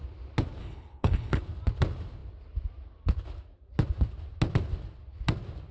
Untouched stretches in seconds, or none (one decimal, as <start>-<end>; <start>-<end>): 0.0-0.6; 1.4-5.7